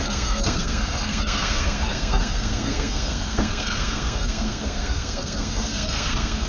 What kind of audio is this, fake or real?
fake